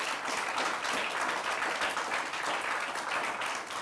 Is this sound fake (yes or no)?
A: no